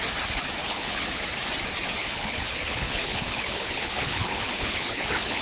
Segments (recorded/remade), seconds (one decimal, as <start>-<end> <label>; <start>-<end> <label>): 0.0-0.6 recorded; 0.6-1.2 remade; 1.2-2.0 recorded; 2.0-5.4 remade